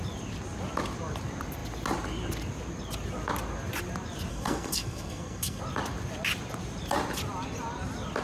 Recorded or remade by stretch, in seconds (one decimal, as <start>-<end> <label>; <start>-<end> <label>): 0.0-4.3 recorded; 4.3-5.6 remade; 5.6-8.2 recorded